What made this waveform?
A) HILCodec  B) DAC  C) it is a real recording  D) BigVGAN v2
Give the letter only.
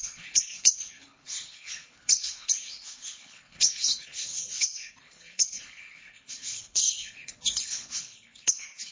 A